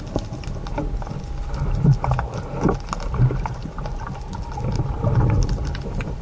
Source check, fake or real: real